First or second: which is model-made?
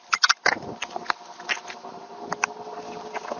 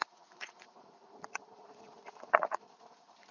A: second